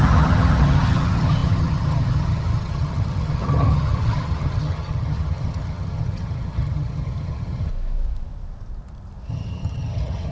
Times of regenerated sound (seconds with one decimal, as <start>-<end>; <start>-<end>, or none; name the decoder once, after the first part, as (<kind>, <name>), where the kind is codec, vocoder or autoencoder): 0.0-7.7 (vocoder, HiFi-GAN); 9.3-10.3